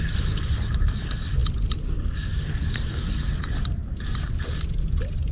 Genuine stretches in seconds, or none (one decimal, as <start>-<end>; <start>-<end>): 1.4-3.4